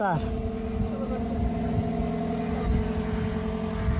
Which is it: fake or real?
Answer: real